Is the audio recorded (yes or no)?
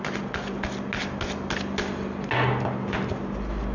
yes